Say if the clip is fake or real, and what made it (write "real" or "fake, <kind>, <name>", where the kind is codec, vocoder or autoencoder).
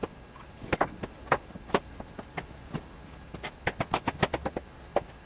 real